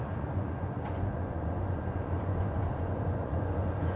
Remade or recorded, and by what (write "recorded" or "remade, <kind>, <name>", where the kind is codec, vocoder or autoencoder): remade, vocoder, Vocos